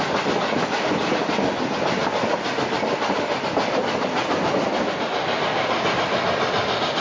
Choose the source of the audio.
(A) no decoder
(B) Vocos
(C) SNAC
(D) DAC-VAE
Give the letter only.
A